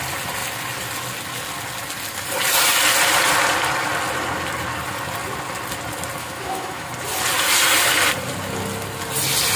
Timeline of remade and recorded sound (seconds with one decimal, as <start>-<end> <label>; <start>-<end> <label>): 0.0-6.2 recorded; 6.2-6.9 remade; 6.9-9.6 recorded